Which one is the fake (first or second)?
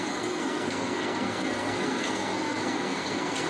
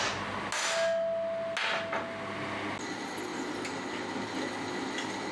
first